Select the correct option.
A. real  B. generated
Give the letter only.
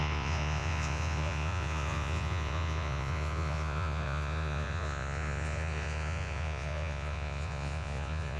B